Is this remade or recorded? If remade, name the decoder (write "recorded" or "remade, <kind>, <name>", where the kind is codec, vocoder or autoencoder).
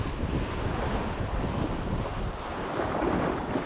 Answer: recorded